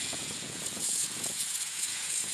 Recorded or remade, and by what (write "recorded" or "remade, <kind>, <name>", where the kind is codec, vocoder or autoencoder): remade, vocoder, Vocos